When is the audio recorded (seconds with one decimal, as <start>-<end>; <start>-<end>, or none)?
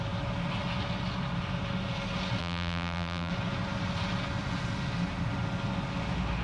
0.0-2.4; 3.3-6.4